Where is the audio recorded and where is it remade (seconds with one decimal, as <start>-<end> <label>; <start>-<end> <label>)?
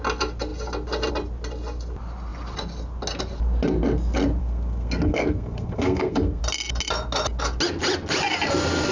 0.0-4.4 recorded; 4.4-6.4 remade; 6.4-8.9 recorded